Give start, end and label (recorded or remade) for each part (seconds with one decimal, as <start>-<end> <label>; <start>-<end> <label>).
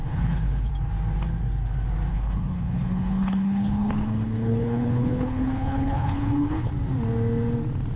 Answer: 0.0-0.7 remade; 0.7-2.1 recorded; 2.1-6.7 remade; 6.7-8.0 recorded